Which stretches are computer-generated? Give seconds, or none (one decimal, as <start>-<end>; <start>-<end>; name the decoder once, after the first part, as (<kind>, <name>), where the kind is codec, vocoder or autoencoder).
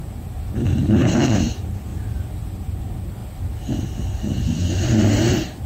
0.0-1.9 (vocoder, BigVGAN v2); 2.4-3.2; 5.1-5.7